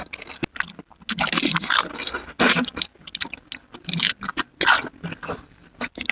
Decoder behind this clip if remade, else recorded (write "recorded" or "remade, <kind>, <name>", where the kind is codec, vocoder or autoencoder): recorded